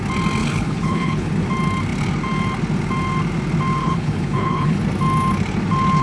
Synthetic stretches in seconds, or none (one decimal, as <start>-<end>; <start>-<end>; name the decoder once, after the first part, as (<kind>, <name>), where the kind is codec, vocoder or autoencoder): 0.4-1.3 (codec, HILCodec); 3.8-4.8